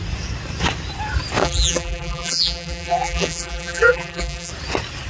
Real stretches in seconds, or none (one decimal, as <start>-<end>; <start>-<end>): 0.0-1.4; 4.5-5.1